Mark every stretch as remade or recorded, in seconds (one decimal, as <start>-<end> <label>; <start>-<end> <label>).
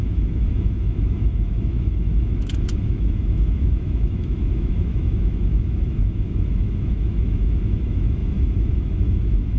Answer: 0.0-9.6 remade